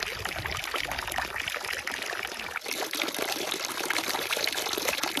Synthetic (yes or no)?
no